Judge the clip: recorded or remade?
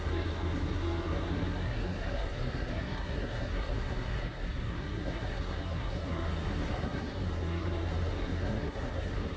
remade